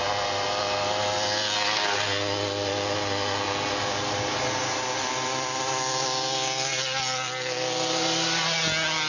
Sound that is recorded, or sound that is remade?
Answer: recorded